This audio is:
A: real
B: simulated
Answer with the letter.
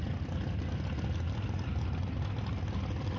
A